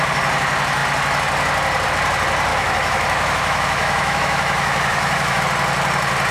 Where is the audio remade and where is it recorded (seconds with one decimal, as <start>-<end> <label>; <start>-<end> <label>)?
0.0-2.5 recorded; 2.5-5.4 remade; 5.4-6.3 recorded